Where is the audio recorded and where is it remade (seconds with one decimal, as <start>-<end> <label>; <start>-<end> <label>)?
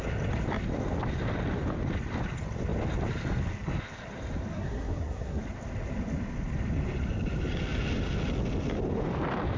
0.0-4.5 recorded; 4.5-5.4 remade; 5.4-9.6 recorded